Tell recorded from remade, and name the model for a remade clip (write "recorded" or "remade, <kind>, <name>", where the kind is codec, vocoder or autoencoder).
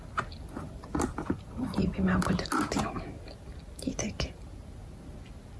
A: recorded